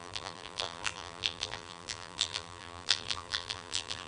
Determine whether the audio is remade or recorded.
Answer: remade